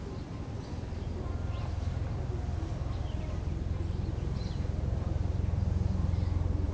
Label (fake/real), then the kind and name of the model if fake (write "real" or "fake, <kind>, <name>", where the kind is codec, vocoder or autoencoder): real